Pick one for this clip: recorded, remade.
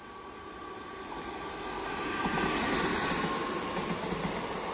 recorded